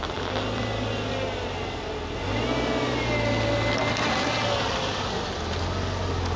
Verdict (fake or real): real